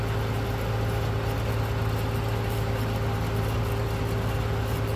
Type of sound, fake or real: real